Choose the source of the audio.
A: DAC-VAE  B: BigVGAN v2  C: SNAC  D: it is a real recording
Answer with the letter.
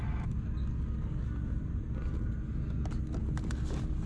D